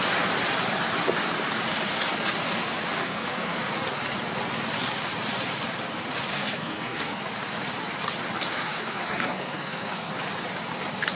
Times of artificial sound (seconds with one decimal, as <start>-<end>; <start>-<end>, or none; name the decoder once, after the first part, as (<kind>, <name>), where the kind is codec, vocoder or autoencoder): 3.0-3.6 (codec, SNAC); 6.3-7.2; 8.5-10.1